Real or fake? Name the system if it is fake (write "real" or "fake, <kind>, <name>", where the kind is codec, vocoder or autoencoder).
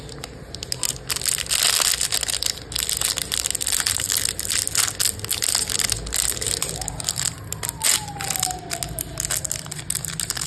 real